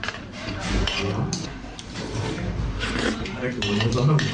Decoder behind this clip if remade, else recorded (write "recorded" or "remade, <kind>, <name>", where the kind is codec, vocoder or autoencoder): remade, vocoder, BigVGAN v2